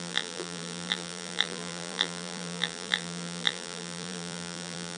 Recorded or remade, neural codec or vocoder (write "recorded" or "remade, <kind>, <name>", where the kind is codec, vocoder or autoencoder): remade, vocoder, BigVGAN v2